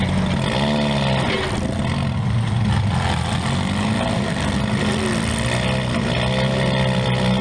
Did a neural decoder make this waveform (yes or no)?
no